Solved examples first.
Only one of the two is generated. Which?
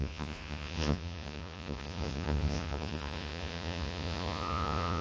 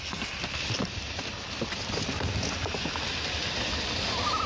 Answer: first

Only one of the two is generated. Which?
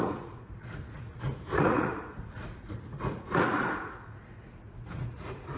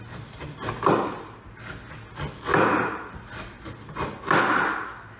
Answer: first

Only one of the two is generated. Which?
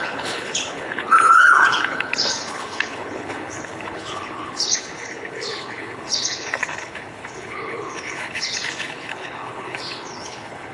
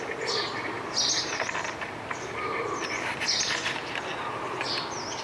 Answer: first